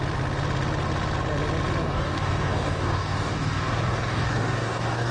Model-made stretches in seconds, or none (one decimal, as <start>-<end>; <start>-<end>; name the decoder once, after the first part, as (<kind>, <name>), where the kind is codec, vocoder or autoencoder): 1.8-5.1 (codec, DAC)